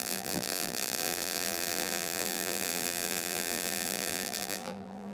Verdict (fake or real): fake